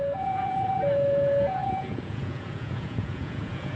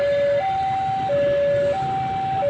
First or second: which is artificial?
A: first